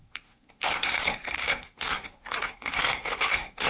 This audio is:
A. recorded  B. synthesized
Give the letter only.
B